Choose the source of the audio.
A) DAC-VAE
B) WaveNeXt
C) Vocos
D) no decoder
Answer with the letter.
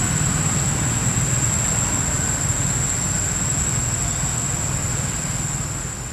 D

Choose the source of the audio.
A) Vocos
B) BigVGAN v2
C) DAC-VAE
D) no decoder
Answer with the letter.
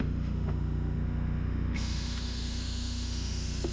C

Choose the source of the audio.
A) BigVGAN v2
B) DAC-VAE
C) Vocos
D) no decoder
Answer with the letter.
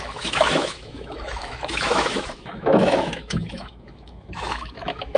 B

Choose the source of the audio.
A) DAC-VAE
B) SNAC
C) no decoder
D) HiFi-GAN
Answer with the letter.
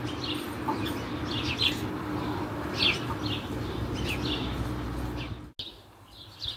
C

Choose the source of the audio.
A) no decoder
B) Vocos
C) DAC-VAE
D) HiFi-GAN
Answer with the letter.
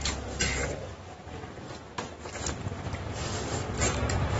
A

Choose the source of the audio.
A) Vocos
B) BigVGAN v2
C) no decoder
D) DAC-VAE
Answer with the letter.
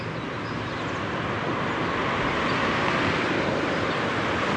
C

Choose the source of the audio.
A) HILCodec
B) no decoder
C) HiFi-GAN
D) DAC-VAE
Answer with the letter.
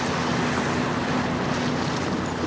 B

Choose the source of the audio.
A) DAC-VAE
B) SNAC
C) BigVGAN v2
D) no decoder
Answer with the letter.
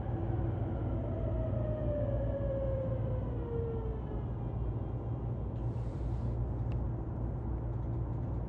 D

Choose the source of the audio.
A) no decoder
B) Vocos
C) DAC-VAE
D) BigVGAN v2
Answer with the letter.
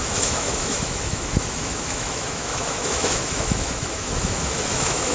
C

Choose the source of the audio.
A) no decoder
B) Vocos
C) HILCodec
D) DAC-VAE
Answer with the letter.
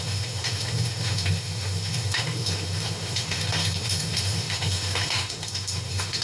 D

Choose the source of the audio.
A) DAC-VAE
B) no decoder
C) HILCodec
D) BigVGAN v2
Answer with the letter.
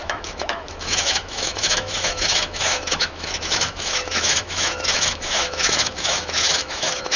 A